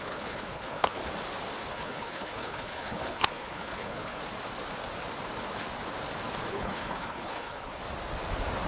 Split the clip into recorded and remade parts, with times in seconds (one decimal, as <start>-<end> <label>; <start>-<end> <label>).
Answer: 0.0-1.0 remade; 1.0-1.7 recorded; 1.7-4.2 remade; 4.2-6.5 recorded; 6.5-7.8 remade; 7.8-8.7 recorded